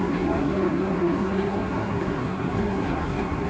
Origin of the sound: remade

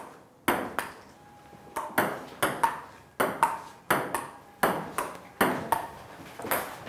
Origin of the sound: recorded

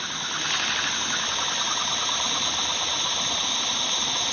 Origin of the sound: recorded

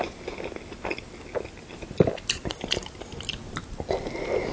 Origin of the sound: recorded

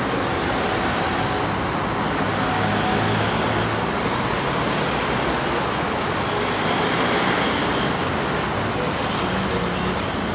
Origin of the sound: recorded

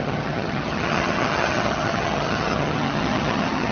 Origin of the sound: remade